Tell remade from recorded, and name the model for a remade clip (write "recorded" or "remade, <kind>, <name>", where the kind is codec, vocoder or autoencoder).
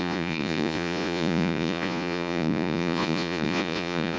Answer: remade, vocoder, Vocos